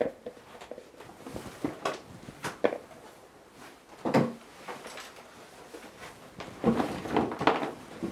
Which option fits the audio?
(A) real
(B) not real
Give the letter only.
A